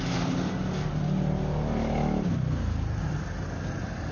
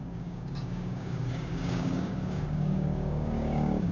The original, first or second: first